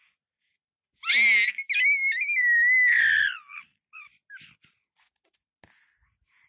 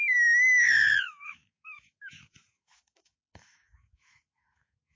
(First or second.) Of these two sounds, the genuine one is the first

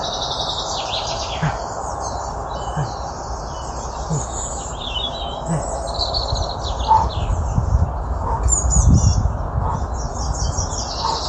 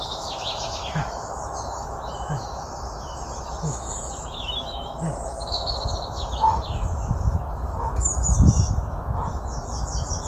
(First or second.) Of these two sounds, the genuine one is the first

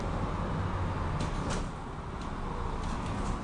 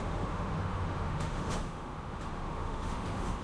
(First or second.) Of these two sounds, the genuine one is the first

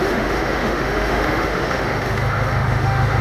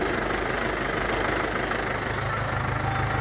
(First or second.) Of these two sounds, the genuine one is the second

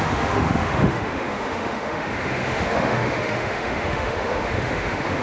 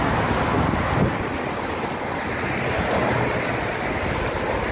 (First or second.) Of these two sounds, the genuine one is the second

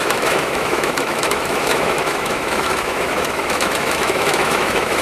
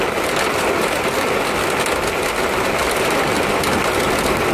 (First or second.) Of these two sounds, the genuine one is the second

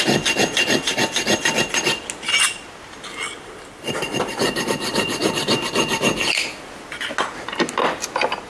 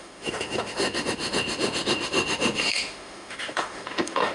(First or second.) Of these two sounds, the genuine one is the first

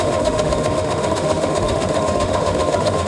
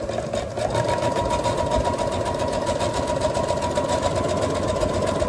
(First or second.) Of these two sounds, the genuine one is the second